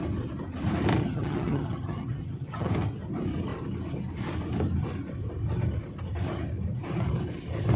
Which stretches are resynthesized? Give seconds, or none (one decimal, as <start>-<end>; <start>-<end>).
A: 1.0-2.7